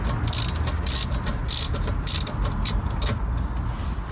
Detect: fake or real real